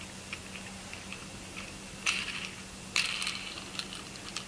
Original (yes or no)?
yes